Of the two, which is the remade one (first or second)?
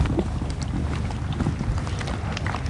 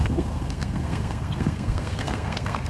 second